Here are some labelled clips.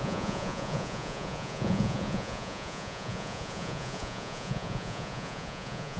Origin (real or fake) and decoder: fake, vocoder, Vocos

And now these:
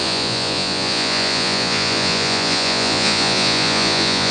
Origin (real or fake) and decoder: fake, vocoder, Vocos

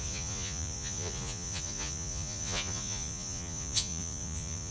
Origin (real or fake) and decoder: fake, vocoder, Vocos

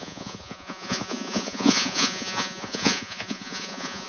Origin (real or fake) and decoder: fake, vocoder, Vocos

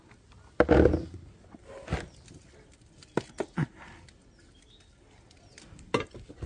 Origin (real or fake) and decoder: real